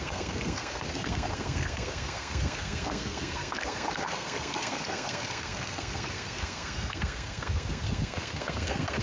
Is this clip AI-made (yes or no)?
yes